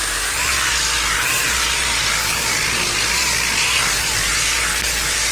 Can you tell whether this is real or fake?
real